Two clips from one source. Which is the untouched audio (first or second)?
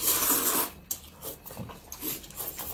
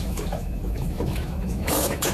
first